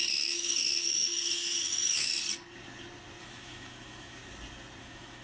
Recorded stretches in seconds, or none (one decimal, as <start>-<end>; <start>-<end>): 2.1-3.2; 4.2-4.8